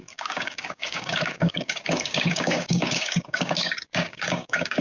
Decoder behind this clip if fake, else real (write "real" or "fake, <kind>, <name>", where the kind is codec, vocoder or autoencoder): fake, codec, DAC